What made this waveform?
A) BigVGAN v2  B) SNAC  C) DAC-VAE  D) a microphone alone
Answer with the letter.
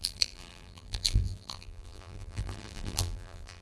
A